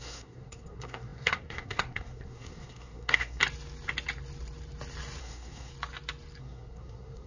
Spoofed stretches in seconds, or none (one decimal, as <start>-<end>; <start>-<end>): 0.0-3.4; 5.2-5.7; 6.4-7.3